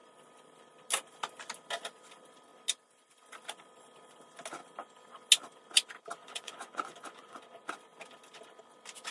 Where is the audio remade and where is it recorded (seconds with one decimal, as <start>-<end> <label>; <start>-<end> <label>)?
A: 0.0-6.2 recorded; 6.2-7.4 remade; 7.4-9.1 recorded